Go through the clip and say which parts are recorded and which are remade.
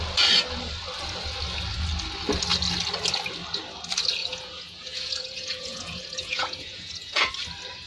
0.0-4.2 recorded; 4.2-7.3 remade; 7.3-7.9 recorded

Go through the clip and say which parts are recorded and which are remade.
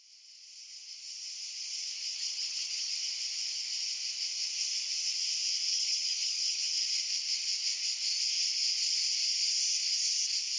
0.0-2.1 recorded; 2.1-2.9 remade; 2.9-5.7 recorded; 5.7-6.7 remade; 6.7-10.6 recorded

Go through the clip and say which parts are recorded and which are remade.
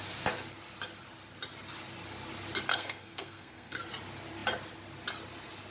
0.0-2.7 recorded; 2.7-3.8 remade; 3.8-5.7 recorded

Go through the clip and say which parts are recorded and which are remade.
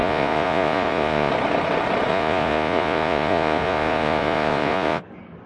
0.0-1.3 remade; 1.3-2.1 recorded; 2.1-5.0 remade; 5.0-5.5 recorded